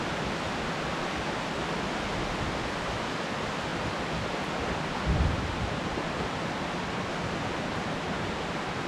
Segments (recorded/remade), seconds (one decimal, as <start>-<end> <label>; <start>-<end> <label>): 0.0-8.9 recorded